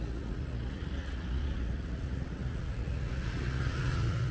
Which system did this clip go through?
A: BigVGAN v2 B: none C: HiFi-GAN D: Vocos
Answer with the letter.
D